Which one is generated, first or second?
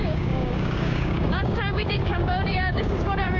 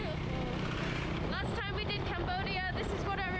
first